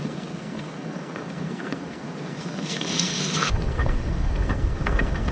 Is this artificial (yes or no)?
yes